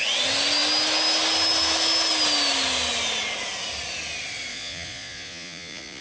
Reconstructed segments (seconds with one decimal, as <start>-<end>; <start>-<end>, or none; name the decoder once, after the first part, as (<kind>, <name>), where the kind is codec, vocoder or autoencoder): 4.5-6.0 (vocoder, Vocos)